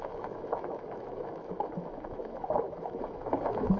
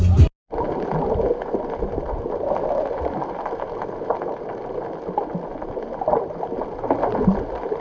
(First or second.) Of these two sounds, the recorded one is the second